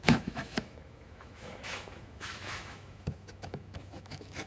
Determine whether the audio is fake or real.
fake